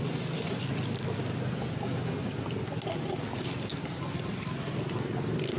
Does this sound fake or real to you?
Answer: real